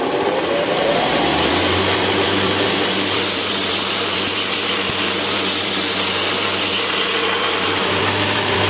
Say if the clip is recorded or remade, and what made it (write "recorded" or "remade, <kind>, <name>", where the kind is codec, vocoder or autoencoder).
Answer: remade, vocoder, BigVGAN v2